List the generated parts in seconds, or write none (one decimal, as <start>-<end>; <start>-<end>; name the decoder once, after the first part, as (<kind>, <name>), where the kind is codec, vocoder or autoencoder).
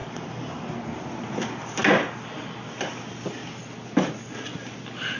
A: none